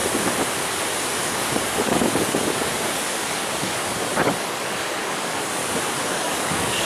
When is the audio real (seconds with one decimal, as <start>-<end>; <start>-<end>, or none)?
0.0-1.2; 5.6-6.1